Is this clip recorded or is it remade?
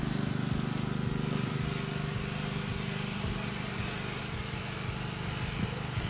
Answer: recorded